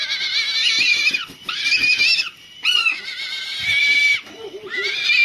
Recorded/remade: remade